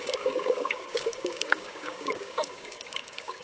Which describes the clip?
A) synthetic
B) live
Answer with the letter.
A